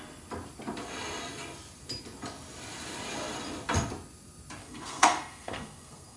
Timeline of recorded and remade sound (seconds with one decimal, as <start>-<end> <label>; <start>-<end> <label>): 0.0-4.6 recorded; 4.6-6.2 remade